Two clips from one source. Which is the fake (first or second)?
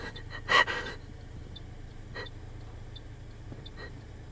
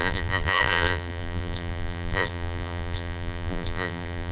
second